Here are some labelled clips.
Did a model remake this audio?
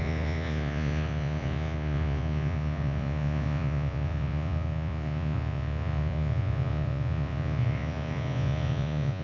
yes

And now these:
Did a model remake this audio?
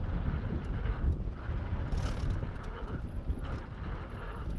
no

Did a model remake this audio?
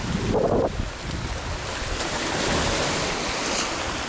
no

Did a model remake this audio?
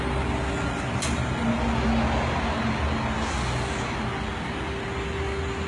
no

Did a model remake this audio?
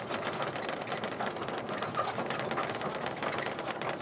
no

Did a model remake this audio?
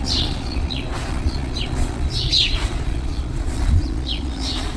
yes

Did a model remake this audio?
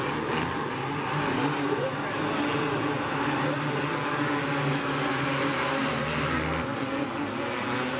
no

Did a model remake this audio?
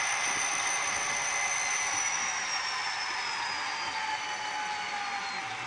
no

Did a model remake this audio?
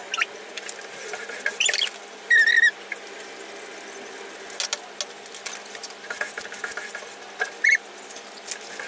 no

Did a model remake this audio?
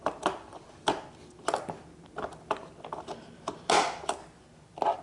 no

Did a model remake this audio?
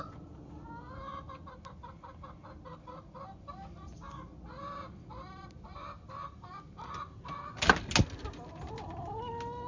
no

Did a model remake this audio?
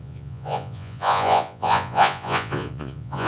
yes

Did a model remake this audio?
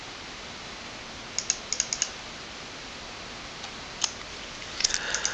no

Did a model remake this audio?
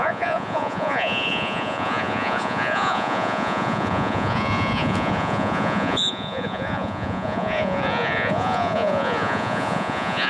yes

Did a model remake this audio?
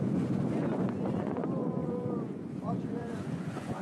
yes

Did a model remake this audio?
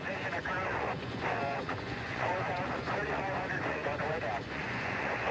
yes